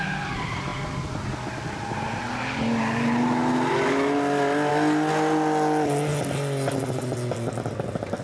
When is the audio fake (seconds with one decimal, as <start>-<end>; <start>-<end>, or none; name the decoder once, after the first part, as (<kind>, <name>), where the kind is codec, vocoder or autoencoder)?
none